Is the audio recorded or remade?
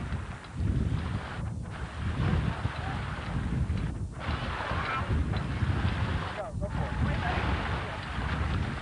recorded